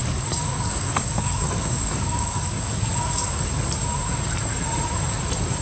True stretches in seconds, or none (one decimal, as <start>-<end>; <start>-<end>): 3.4-5.6